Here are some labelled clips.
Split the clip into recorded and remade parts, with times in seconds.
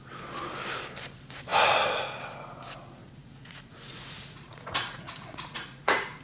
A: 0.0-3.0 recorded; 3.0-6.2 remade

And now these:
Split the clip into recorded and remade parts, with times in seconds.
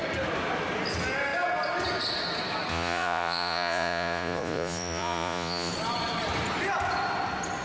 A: 0.0-2.7 recorded; 2.7-5.7 remade; 5.7-7.6 recorded